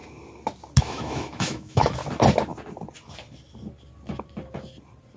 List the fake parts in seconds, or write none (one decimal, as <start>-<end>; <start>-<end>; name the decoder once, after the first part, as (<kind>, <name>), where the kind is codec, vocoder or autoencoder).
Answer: 0.8-2.0 (autoencoder, DAC-VAE)